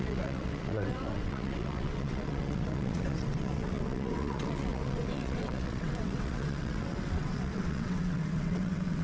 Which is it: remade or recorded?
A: remade